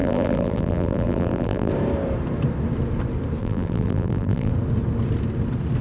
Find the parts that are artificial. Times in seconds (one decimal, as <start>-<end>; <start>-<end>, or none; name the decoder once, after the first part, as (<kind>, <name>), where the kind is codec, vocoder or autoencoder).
0.0-1.7 (vocoder, BigVGAN v2); 3.4-4.5